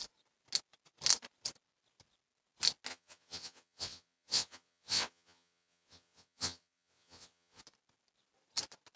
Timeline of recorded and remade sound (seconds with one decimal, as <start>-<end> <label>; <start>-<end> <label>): 0.0-2.9 recorded; 2.9-7.6 remade; 7.6-9.0 recorded